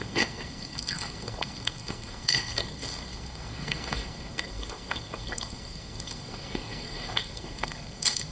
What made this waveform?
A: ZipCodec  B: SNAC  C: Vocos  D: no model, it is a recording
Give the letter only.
B